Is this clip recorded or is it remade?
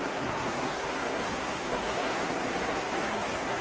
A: remade